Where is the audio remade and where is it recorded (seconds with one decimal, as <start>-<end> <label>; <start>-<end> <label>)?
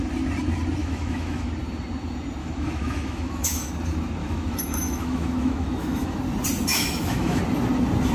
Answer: 0.0-0.8 recorded; 0.8-1.5 remade; 1.5-2.4 recorded; 2.4-3.7 remade; 3.7-4.2 recorded; 4.2-6.2 remade; 6.2-6.7 recorded; 6.7-7.4 remade; 7.4-8.1 recorded